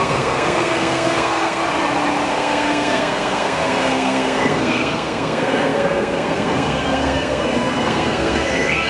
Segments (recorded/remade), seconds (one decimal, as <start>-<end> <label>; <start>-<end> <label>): 0.0-1.6 remade; 1.6-2.3 recorded; 2.3-8.9 remade